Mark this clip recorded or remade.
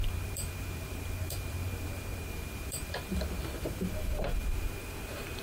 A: remade